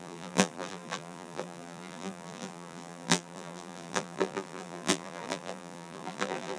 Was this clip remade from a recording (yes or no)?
yes